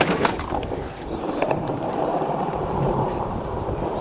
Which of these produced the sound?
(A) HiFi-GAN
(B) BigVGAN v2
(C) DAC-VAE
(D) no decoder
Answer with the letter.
B